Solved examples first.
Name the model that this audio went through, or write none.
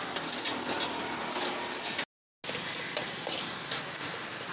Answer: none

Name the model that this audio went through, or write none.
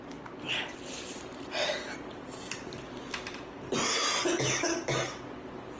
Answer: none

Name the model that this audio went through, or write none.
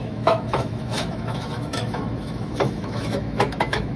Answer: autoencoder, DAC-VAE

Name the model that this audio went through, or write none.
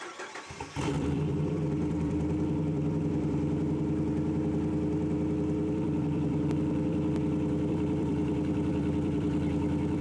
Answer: vocoder, BigVGAN v2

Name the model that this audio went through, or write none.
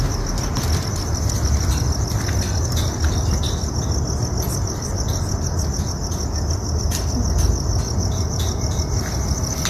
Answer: none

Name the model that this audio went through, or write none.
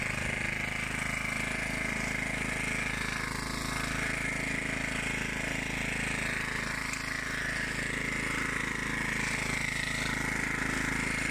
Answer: none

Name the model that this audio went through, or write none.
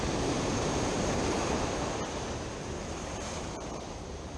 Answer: vocoder, BigVGAN v2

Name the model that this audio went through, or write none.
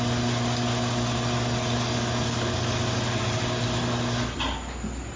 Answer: none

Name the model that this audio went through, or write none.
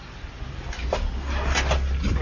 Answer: none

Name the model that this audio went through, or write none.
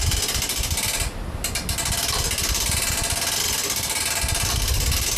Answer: none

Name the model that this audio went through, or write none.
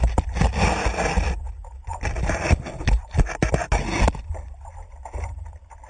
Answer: none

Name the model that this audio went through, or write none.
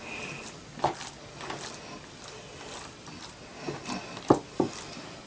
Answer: none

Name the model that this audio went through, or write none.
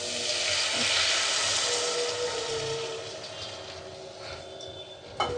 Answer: none